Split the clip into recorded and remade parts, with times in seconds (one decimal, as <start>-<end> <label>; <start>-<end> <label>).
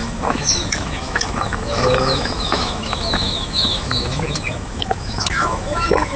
0.0-6.2 remade